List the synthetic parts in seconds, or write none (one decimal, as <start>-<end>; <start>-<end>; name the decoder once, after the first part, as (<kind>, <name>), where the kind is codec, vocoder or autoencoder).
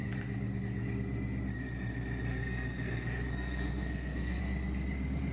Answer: 2.3-4.4 (codec, SNAC)